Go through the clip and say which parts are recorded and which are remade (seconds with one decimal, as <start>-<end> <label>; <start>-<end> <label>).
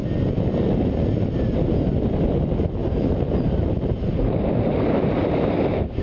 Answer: 0.0-2.8 recorded; 2.8-5.6 remade; 5.6-6.0 recorded